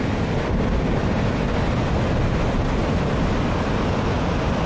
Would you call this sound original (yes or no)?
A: yes